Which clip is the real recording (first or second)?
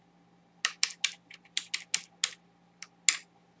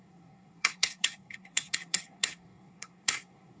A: first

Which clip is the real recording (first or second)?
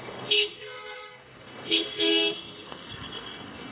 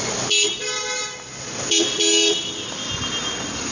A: second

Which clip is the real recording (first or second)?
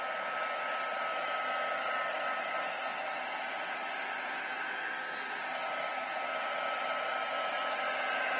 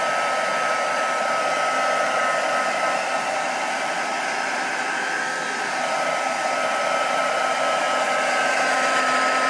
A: first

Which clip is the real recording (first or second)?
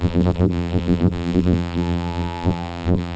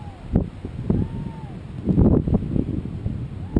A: second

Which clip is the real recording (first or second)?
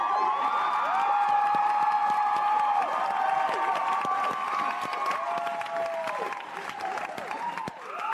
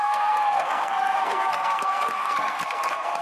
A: first